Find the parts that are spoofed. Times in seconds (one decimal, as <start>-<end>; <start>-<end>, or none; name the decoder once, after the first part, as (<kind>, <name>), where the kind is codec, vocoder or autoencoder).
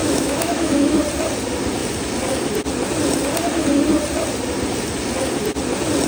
0.0-1.0 (autoencoder, DAC-VAE)